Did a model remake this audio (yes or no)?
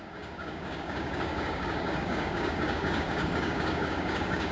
yes